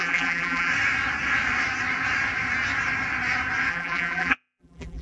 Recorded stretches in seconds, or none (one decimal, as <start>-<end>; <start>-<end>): 0.7-3.7